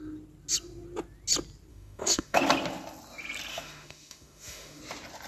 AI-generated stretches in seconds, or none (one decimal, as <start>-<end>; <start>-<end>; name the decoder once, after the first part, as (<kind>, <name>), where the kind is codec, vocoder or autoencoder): 1.7-2.4 (autoencoder, DAC-VAE); 3.5-4.8